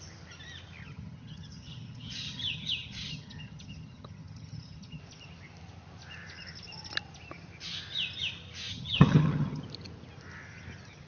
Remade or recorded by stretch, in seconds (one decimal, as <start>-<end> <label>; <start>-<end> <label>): 0.0-0.8 recorded; 0.8-5.0 remade; 5.0-8.7 recorded; 8.7-9.6 remade; 9.6-11.1 recorded